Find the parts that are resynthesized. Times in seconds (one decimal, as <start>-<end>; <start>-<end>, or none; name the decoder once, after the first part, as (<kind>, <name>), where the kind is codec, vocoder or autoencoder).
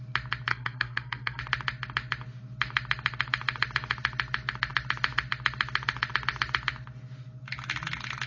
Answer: 0.5-1.4 (codec, SNAC)